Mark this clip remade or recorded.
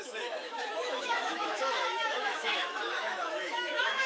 remade